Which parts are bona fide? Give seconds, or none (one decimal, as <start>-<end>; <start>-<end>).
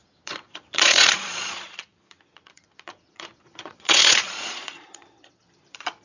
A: none